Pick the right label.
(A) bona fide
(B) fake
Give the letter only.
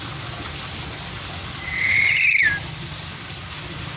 A